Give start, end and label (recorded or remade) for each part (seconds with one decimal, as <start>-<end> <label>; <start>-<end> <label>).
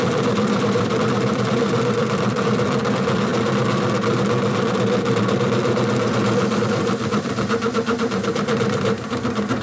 0.0-3.3 remade; 3.3-6.7 recorded; 6.7-9.6 remade